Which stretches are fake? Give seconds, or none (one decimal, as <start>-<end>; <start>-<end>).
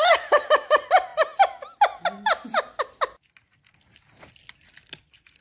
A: none